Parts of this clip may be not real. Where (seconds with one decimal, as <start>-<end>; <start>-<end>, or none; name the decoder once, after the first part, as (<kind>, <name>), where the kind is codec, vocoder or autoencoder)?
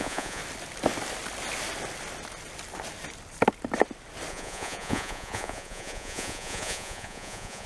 0.0-0.4 (vocoder, Vocos); 4.3-7.7